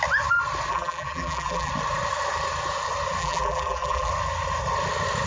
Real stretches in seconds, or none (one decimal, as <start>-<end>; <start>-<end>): 0.0-0.7; 1.7-3.2; 4.1-5.3